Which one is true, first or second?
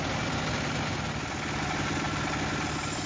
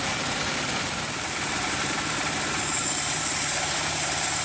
first